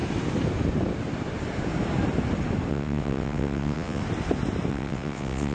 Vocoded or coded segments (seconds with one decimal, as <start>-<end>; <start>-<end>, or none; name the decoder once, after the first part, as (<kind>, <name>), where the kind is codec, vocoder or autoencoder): 2.7-4.0 (vocoder, WaveNeXt); 4.7-5.5